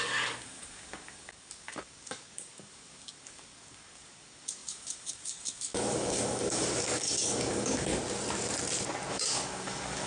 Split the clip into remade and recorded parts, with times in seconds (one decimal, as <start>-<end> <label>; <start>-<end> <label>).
0.0-7.9 remade; 7.9-9.1 recorded; 9.1-10.1 remade